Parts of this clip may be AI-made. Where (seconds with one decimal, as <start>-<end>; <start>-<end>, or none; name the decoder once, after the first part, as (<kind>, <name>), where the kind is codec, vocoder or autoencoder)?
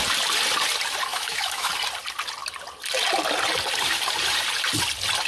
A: 1.1-1.7 (autoencoder, DAC-VAE)